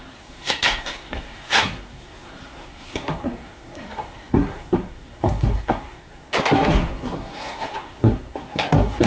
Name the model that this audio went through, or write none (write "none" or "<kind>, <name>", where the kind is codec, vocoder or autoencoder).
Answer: codec, SNAC